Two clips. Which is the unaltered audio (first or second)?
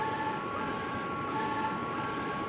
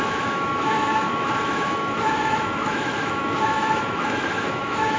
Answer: first